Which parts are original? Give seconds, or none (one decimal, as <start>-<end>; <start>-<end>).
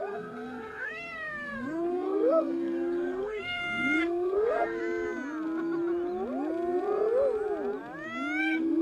4.8-8.4